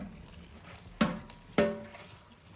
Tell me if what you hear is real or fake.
real